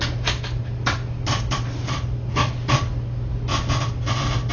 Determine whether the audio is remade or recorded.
recorded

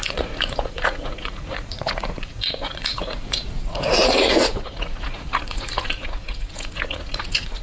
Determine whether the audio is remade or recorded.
remade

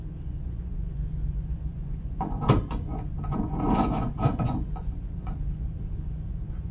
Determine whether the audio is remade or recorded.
remade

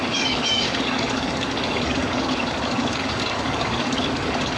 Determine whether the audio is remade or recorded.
remade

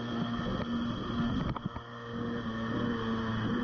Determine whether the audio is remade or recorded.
recorded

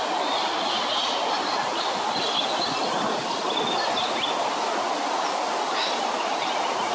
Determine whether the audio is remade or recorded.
recorded